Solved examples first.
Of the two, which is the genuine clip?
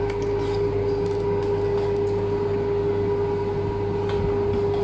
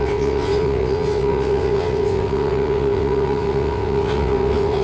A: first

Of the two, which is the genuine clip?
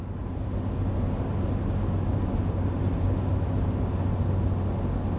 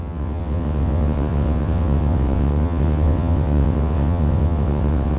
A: first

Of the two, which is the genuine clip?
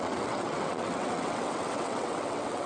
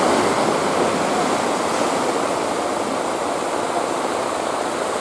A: second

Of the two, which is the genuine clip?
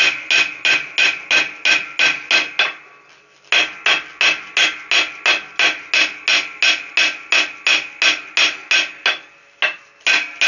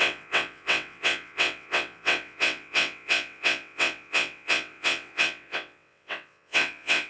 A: first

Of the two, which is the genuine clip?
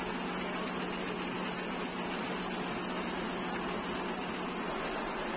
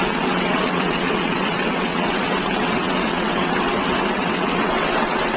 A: first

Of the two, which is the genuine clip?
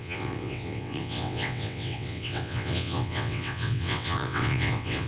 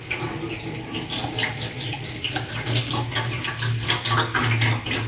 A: second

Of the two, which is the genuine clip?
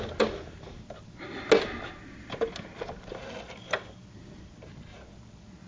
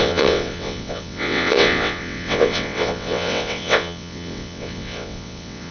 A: first